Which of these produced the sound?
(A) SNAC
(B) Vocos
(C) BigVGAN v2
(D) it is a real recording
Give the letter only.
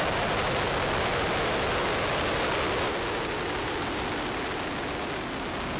D